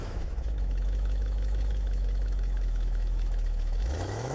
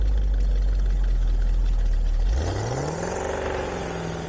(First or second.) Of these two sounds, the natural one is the second